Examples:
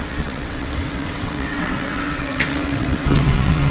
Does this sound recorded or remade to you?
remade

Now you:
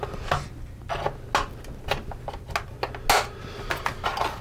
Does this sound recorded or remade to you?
recorded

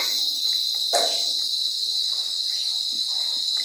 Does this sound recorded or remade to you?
recorded